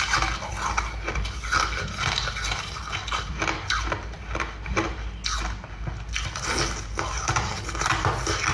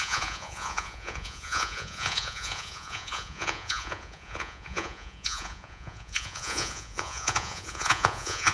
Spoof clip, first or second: second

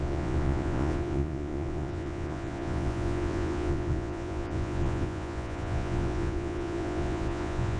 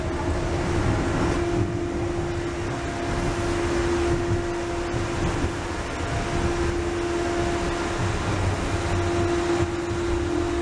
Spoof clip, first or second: first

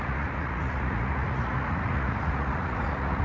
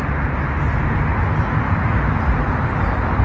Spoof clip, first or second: first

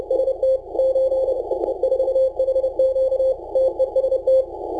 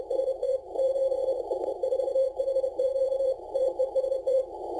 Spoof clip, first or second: second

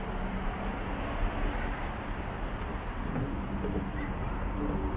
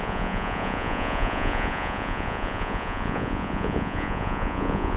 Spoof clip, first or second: second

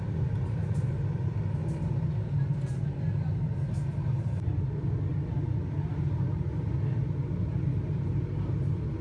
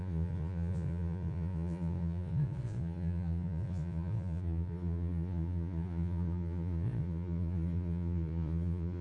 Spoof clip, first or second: second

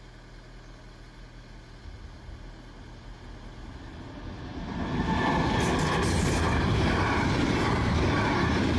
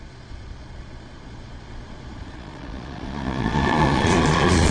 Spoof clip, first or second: second